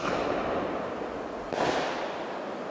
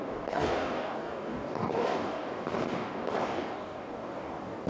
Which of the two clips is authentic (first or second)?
first